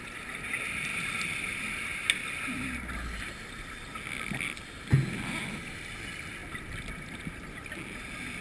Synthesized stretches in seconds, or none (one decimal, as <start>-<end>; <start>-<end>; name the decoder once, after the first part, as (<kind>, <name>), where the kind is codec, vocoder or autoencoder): 0.9-2.0 (vocoder, BigVGAN v2); 6.4-6.9